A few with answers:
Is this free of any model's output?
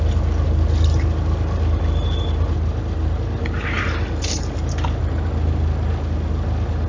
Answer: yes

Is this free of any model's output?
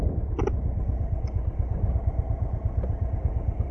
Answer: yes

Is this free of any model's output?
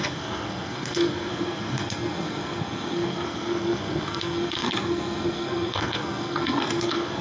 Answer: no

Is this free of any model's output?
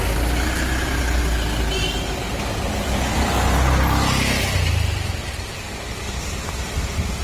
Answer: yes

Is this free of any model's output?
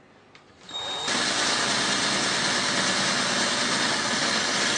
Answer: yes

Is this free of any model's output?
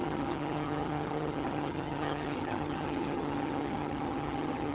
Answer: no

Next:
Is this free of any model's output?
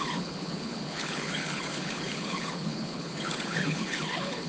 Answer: no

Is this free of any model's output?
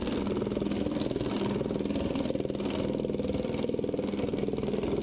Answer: yes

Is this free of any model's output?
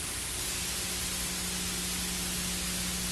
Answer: yes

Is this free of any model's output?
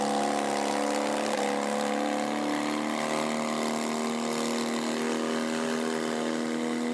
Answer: yes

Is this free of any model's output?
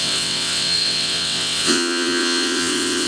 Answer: no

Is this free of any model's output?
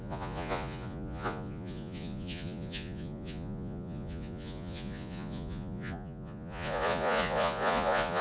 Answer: no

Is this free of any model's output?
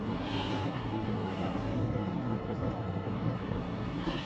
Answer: no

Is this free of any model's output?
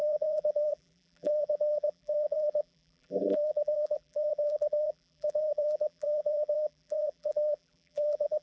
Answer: no